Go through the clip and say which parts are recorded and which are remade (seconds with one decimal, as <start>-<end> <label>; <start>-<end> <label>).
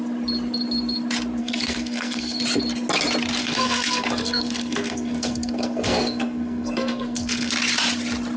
0.0-1.4 recorded; 1.4-2.4 remade; 2.4-3.4 recorded; 3.4-7.5 remade; 7.5-8.4 recorded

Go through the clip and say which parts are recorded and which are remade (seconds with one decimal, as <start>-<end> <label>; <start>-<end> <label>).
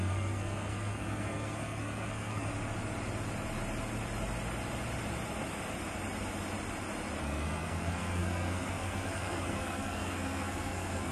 0.0-2.5 remade; 2.5-7.2 recorded; 7.2-11.1 remade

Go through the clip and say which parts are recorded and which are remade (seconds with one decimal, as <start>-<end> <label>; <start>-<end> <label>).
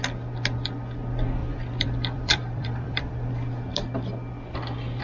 0.0-1.4 recorded; 1.4-3.3 remade; 3.3-5.0 recorded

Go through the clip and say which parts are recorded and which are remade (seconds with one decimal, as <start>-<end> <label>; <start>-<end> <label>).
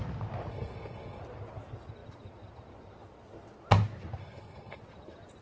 0.0-0.5 recorded; 0.5-1.2 remade; 1.2-4.2 recorded; 4.2-4.8 remade; 4.8-5.4 recorded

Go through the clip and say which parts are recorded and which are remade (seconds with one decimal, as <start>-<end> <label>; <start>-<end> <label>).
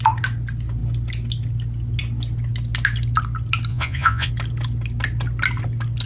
0.0-3.7 recorded; 3.7-4.3 remade; 4.3-6.1 recorded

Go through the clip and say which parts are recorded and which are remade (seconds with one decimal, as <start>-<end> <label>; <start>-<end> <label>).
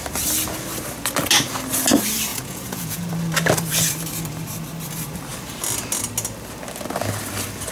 0.0-2.3 recorded; 2.3-3.1 remade; 3.1-7.7 recorded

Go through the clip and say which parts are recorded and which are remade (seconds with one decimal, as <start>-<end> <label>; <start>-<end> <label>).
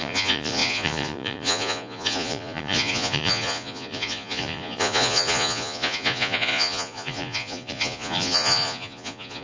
0.0-9.4 remade